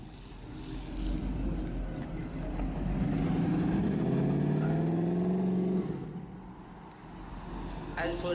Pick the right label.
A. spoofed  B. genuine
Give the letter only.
B